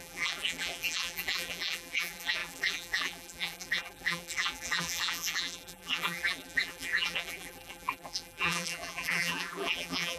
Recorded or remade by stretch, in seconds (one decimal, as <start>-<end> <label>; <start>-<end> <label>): 0.0-10.2 remade